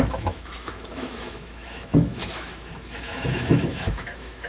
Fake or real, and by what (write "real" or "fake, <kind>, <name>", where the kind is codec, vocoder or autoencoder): fake, autoencoder, DAC-VAE